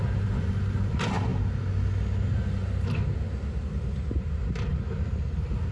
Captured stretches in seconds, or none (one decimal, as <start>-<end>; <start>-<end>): 0.0-5.7